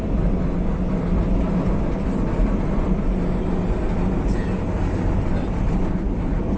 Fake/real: real